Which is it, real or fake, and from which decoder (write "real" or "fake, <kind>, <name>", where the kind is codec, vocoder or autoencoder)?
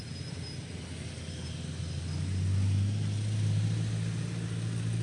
real